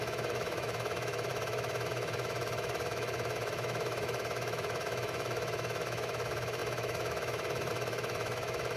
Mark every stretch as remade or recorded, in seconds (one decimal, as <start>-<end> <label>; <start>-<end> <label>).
0.0-8.8 remade